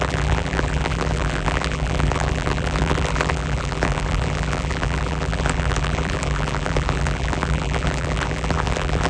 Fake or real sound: fake